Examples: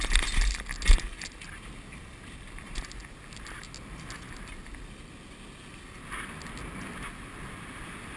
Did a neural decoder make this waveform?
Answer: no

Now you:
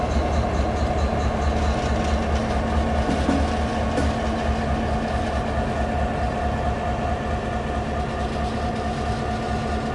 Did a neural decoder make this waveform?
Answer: no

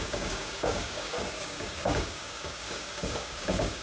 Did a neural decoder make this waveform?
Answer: yes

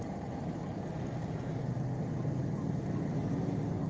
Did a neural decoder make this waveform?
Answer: no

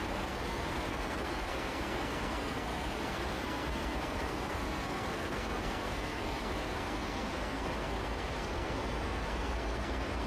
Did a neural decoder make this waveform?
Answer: yes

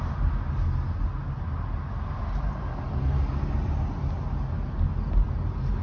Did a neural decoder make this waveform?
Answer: no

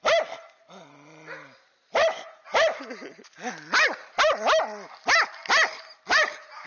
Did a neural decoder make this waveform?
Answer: no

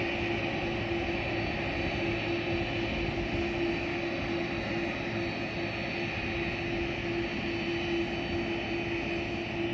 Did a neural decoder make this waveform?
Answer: no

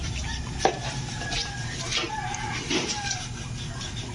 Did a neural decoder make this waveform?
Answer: yes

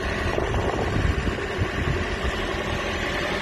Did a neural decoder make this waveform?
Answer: yes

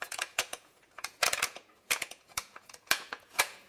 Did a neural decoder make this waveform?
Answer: yes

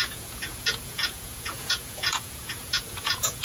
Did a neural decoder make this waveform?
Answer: yes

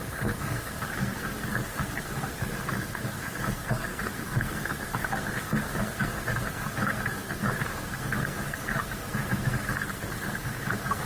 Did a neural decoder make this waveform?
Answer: yes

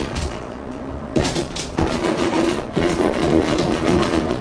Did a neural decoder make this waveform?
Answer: yes